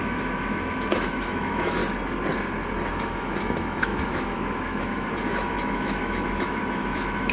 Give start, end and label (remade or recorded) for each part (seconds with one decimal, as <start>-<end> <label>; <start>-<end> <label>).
0.0-1.8 remade; 1.8-2.9 recorded; 2.9-7.3 remade